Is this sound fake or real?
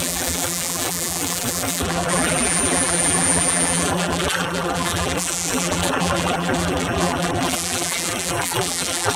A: fake